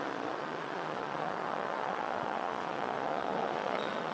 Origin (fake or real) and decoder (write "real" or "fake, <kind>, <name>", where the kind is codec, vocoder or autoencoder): fake, vocoder, Vocos